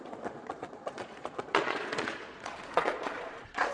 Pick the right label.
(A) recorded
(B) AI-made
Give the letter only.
B